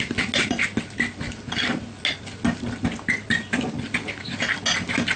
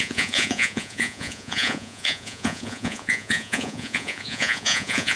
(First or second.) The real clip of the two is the first